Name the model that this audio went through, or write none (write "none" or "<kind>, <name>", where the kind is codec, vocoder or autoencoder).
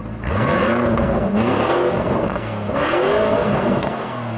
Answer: codec, SNAC